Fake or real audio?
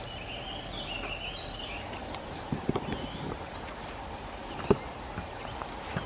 real